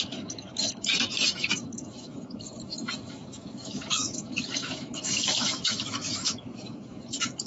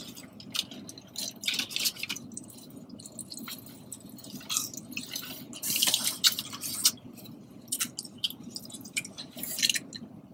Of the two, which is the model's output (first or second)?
first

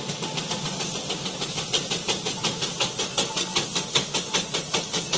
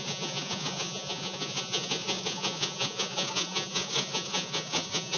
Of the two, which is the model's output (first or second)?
second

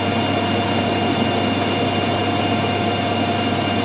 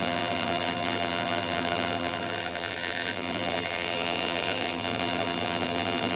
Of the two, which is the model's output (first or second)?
second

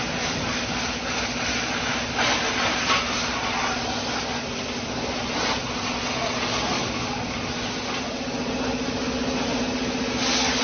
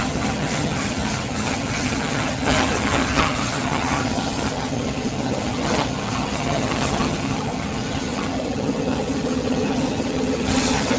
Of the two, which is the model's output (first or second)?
second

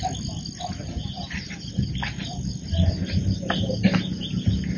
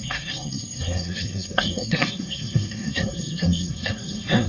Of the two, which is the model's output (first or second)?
second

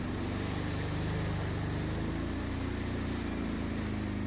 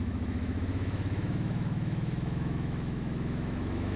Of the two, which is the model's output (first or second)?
second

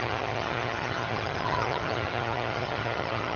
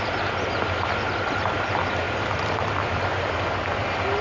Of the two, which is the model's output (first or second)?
first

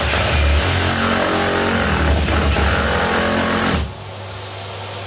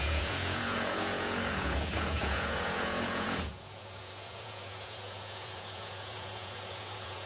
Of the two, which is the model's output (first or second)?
second